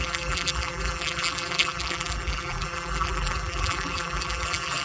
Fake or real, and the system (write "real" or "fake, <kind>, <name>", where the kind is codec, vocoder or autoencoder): fake, vocoder, BigVGAN v2